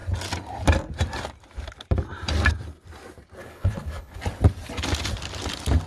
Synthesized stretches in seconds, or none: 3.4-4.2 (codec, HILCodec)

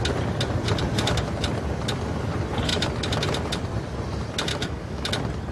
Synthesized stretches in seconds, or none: 4.5-5.1 (autoencoder, DAC-VAE)

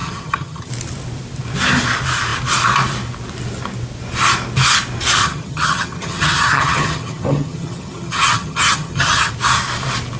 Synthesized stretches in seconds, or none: 0.0-0.7 (vocoder, HiFi-GAN); 5.2-9.3

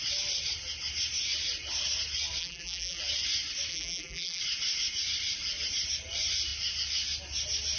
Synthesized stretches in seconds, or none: 2.4-3.0 (vocoder, BigVGAN v2); 3.7-4.4

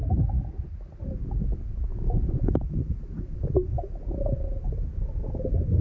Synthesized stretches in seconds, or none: 1.9-2.5 (vocoder, Vocos)

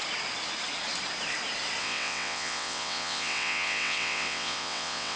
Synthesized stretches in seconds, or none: 1.8-5.2 (vocoder, WaveNeXt)

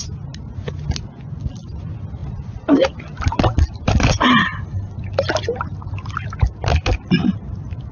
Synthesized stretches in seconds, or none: none